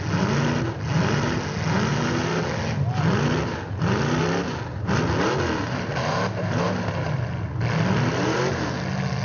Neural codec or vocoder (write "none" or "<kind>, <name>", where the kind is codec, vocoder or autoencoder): none